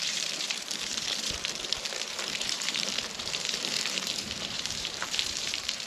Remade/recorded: remade